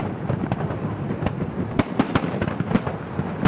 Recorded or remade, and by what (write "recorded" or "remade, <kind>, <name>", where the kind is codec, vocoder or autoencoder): recorded